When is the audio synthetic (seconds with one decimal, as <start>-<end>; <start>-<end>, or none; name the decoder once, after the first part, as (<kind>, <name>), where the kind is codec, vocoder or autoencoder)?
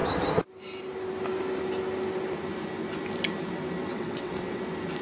3.9-4.6 (vocoder, WaveNeXt)